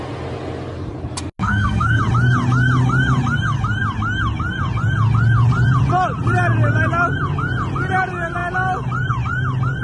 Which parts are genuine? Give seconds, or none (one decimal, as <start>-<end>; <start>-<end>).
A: 0.0-1.4; 2.0-9.8